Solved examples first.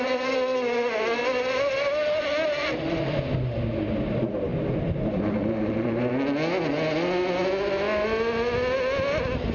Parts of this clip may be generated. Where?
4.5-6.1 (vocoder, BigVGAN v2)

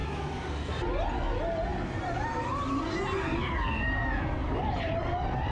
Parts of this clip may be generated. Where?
none